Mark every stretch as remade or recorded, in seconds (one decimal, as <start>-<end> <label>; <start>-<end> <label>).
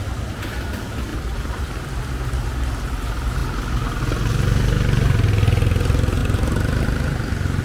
0.0-1.1 recorded; 1.1-2.0 remade; 2.0-6.2 recorded; 6.2-7.6 remade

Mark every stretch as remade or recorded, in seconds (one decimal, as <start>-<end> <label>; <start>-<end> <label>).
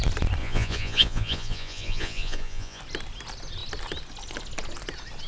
0.0-0.4 recorded; 0.4-2.8 remade; 2.8-5.3 recorded